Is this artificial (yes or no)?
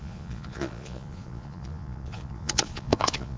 yes